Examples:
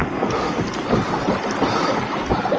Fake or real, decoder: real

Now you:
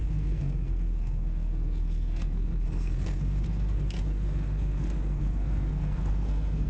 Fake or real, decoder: fake, codec, SNAC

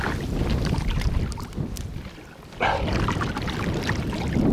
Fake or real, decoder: real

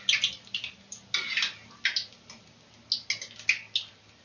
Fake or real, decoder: real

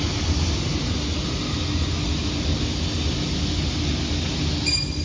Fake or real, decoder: real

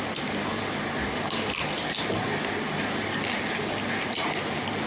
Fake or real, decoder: real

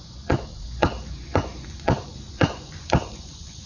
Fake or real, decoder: fake, vocoder, Vocos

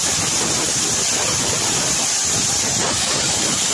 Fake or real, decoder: real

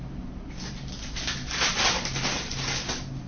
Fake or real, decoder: real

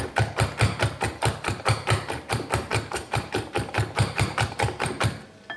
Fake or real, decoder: fake, vocoder, BigVGAN v2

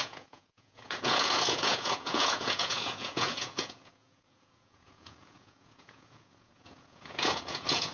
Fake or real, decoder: fake, vocoder, Vocos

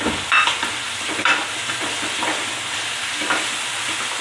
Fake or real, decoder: real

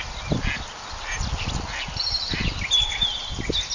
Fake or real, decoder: real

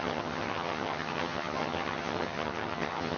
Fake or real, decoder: fake, vocoder, HiFi-GAN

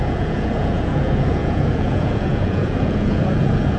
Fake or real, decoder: fake, vocoder, Vocos